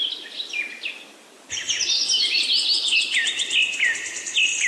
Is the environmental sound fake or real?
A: real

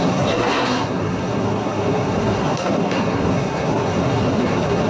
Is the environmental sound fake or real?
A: fake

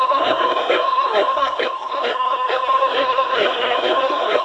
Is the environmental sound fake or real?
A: fake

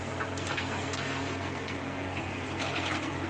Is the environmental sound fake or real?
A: fake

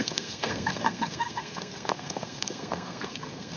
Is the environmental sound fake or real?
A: fake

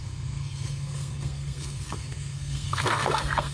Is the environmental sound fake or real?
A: fake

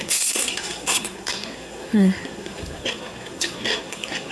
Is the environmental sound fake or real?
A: fake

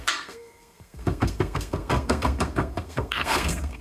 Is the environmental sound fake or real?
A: fake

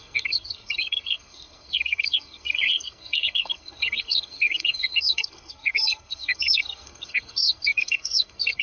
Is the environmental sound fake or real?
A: fake